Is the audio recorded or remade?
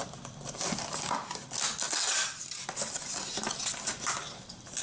recorded